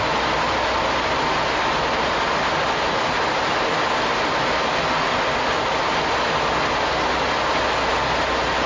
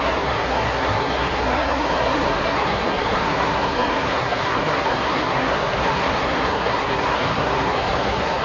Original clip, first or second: first